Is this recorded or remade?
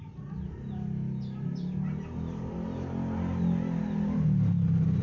recorded